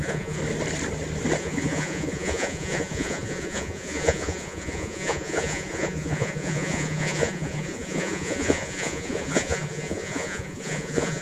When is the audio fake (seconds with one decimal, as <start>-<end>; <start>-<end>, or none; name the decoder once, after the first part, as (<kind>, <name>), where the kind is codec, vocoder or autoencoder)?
0.0-0.4 (vocoder, Vocos); 1.4-11.2